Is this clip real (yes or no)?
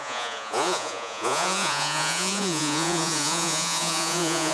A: no